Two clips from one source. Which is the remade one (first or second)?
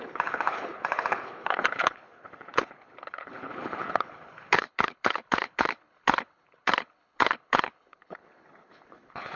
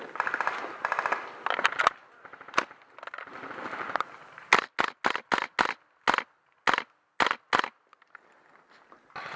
first